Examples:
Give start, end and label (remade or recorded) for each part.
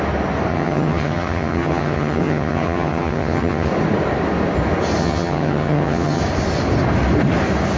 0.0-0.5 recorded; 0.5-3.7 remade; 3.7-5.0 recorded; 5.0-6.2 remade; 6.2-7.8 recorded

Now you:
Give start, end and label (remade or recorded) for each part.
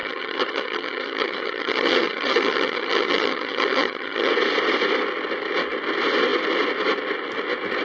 0.0-4.3 remade; 4.3-7.8 recorded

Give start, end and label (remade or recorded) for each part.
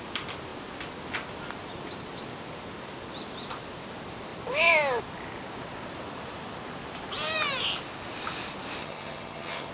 0.0-8.8 recorded; 8.8-9.7 remade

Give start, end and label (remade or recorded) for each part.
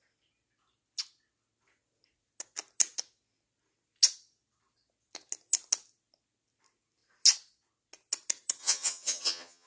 0.0-8.6 recorded; 8.6-9.7 remade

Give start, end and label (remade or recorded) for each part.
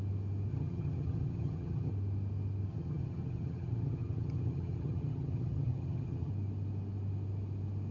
0.0-0.5 recorded; 0.5-1.9 remade; 1.9-2.7 recorded; 2.7-6.3 remade; 6.3-7.9 recorded